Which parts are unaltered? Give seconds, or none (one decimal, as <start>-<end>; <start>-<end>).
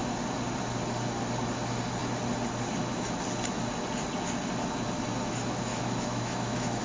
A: 0.0-5.7